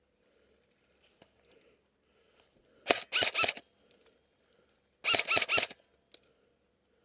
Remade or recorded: recorded